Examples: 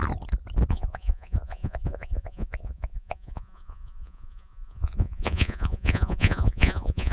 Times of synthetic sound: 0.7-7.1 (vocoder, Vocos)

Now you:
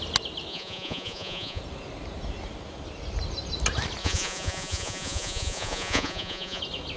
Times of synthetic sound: 0.5-1.6 (vocoder, Vocos); 4.0-6.6

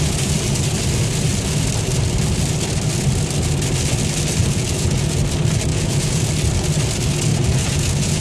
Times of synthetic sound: 4.4-5.2 (vocoder, Vocos); 5.7-6.3; 7.3-8.2

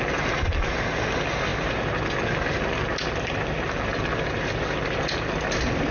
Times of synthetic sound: none

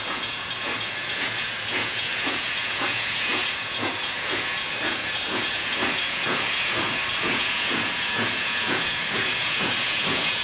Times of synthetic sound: 0.0-10.4 (vocoder, Vocos)